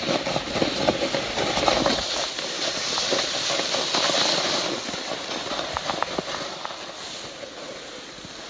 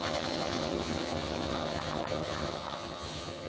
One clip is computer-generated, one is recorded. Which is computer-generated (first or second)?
second